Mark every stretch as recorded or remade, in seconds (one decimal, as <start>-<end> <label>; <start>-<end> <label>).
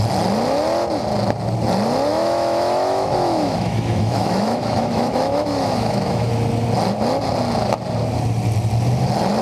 0.0-2.1 recorded; 2.1-6.3 remade; 6.3-9.4 recorded